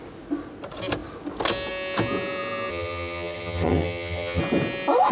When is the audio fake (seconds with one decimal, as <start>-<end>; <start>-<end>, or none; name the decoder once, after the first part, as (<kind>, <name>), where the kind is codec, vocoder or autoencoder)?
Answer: 2.7-4.4 (vocoder, HiFi-GAN)